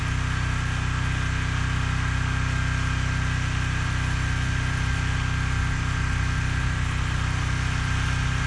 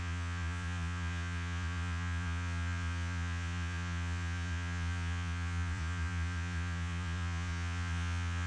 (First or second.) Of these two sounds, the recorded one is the first